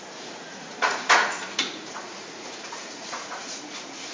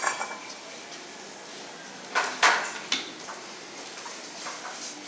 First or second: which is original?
second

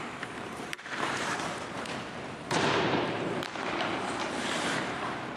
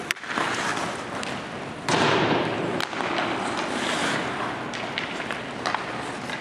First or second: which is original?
second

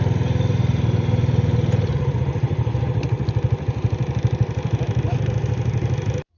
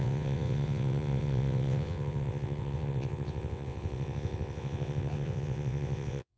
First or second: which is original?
first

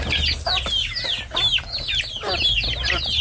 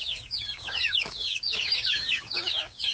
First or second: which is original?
first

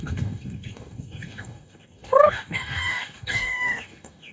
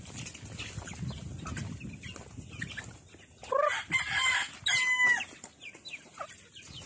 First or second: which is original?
second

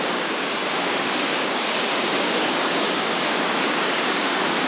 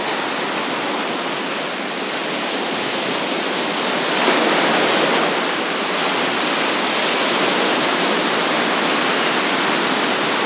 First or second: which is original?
second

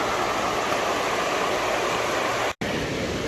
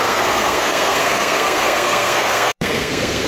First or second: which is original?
first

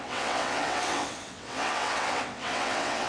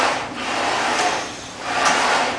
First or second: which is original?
second